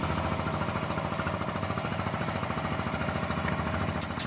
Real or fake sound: real